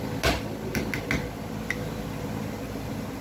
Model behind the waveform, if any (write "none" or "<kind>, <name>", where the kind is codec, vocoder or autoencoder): none